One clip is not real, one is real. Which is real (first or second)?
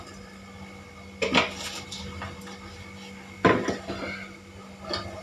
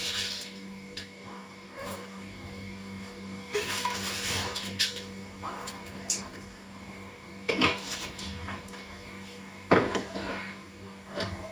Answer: first